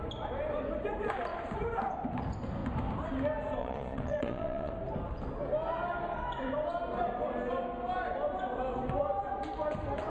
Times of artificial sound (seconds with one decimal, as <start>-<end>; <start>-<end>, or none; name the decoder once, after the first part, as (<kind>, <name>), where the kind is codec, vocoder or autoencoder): 3.6-4.7 (vocoder, Vocos)